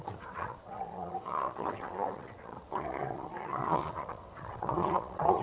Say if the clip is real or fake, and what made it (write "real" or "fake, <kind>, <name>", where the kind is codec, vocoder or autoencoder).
fake, vocoder, WaveNeXt